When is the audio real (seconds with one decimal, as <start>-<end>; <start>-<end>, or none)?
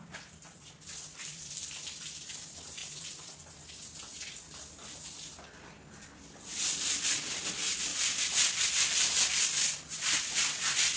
2.3-7.9